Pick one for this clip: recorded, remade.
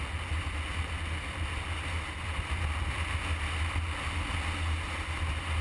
recorded